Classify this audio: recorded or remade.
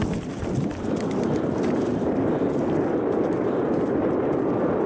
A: recorded